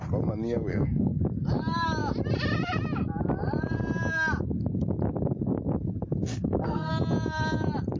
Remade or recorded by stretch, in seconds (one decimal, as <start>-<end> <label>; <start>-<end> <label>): 0.0-0.7 recorded; 0.7-1.2 remade; 1.2-6.3 recorded; 6.3-6.9 remade; 6.9-8.0 recorded